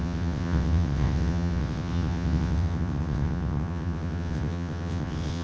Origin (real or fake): fake